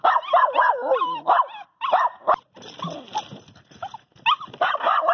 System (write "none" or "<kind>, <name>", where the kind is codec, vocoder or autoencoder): none